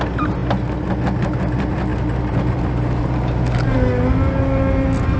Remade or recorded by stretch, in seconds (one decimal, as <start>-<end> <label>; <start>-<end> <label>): 0.0-5.2 recorded